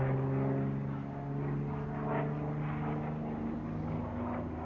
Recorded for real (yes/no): yes